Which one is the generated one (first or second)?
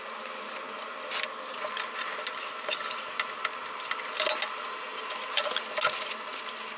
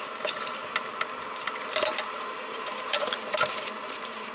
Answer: second